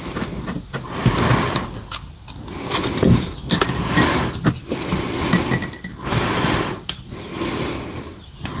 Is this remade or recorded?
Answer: recorded